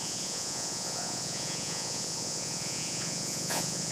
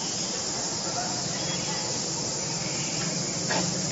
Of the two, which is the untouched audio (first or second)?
second